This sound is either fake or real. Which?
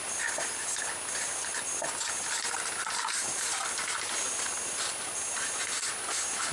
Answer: real